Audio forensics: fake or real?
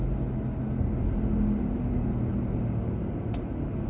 real